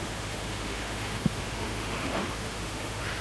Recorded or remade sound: remade